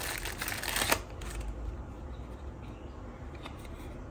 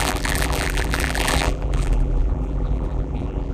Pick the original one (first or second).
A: first